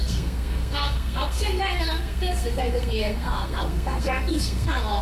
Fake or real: fake